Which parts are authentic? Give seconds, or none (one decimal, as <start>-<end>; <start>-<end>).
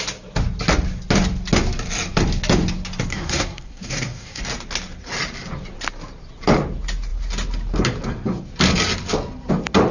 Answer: 0.0-3.1; 4.4-9.9